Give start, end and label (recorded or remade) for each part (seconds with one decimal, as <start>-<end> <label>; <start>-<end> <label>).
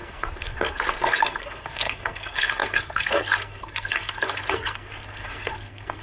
0.0-6.0 remade